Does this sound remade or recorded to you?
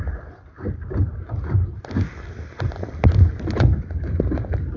recorded